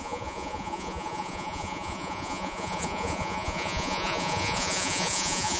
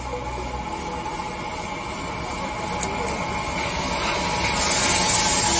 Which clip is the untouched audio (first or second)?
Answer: second